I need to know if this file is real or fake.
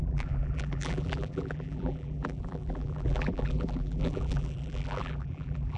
fake